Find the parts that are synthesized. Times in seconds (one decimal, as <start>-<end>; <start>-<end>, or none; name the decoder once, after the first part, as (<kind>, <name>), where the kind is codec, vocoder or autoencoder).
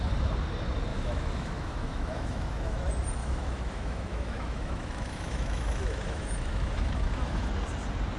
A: 0.9-2.8 (autoencoder, DAC-VAE); 3.2-7.5